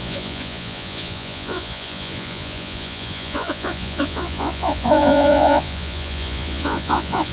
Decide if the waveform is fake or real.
fake